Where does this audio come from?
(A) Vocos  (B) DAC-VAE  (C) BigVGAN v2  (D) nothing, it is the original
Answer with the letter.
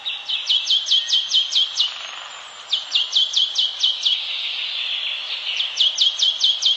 D